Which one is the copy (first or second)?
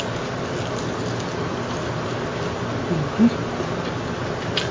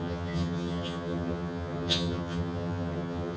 second